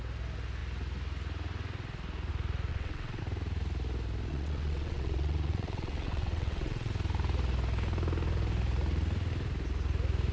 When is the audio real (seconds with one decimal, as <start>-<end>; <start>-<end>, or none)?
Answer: 0.0-2.7; 3.2-4.3; 6.9-10.3

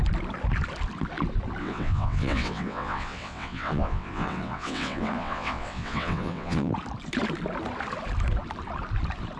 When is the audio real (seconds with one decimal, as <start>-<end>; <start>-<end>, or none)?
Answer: 0.0-1.6; 6.7-9.4

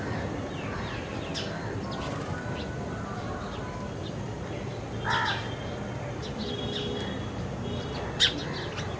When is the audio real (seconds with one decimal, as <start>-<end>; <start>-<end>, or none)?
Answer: 0.0-9.0

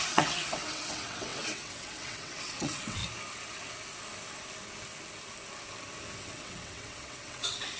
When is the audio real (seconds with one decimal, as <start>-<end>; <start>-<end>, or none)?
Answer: 3.0-6.2

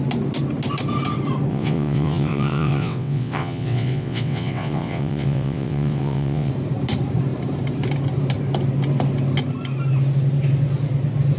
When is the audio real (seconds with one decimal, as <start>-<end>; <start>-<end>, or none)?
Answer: 0.0-1.5; 6.5-11.4

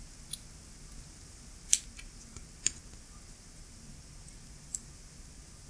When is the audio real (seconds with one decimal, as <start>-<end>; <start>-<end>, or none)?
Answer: 0.0-5.7

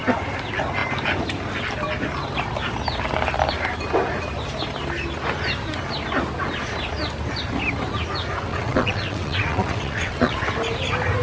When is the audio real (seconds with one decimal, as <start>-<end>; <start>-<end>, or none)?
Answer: 0.0-8.5; 10.5-11.2